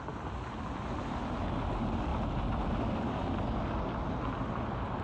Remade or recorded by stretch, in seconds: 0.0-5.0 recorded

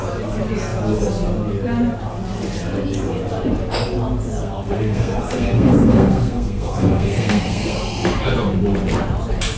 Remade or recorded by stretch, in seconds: 0.0-4.4 recorded; 4.4-7.8 remade; 7.8-9.6 recorded